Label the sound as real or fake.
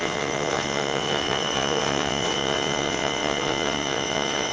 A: fake